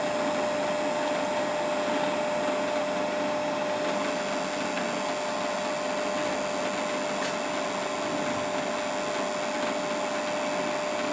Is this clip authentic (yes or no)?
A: yes